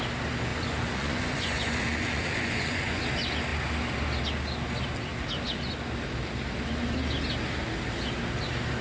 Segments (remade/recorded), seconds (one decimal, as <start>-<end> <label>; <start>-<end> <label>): 0.0-0.5 recorded; 0.5-3.0 remade; 3.0-8.8 recorded